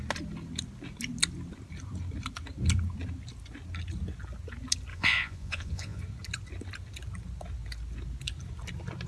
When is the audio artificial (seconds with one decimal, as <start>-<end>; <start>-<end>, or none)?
4.9-6.0